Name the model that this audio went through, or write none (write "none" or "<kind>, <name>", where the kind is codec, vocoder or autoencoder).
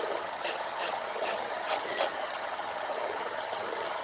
vocoder, HiFi-GAN